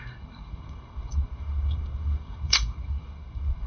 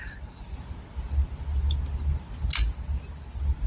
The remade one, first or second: first